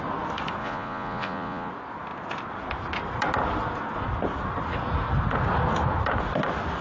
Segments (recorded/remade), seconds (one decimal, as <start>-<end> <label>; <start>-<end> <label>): 0.0-0.6 recorded; 0.6-1.7 remade; 1.7-6.8 recorded